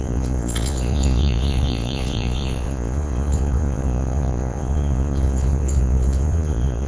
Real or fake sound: fake